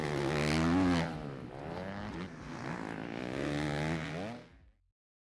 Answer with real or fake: real